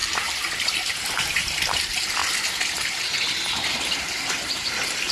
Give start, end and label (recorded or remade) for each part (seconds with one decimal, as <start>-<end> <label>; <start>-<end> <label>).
0.0-2.2 remade; 2.2-3.7 recorded; 3.7-5.1 remade